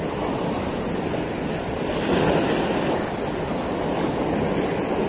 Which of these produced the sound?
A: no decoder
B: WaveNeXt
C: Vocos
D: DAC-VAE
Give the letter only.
A